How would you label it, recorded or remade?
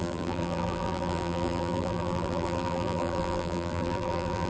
remade